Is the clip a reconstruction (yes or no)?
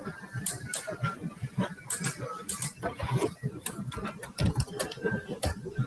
no